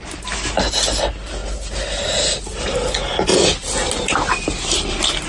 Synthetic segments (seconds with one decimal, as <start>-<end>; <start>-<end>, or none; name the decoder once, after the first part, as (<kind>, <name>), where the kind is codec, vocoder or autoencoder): none